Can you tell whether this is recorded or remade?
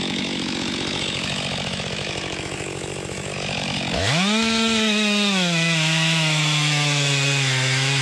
remade